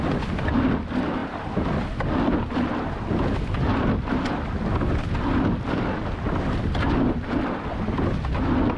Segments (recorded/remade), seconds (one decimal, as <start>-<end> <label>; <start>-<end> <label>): 0.0-8.8 recorded